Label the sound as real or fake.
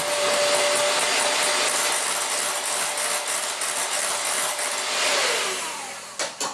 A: real